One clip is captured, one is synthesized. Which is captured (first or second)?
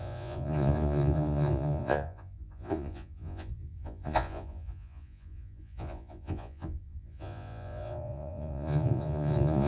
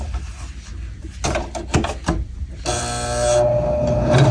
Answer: second